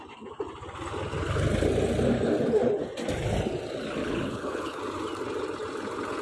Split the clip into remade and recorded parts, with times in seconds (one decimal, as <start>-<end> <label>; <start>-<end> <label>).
0.0-4.0 recorded; 4.0-4.8 remade; 4.8-6.2 recorded